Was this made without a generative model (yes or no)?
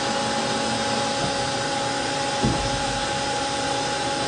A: yes